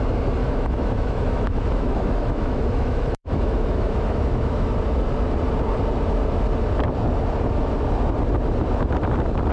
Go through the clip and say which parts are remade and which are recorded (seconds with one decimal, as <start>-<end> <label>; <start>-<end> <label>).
0.0-0.4 recorded; 0.4-4.8 remade; 4.8-9.5 recorded